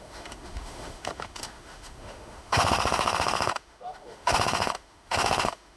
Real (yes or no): no